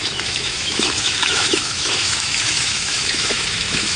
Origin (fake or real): fake